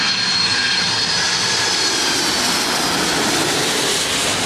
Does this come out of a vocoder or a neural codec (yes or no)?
no